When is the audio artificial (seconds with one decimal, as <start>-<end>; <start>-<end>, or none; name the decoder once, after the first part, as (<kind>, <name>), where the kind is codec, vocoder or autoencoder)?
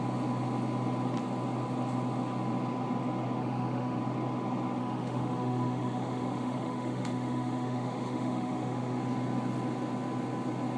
3.4-4.0 (autoencoder, DAC-VAE); 4.8-9.0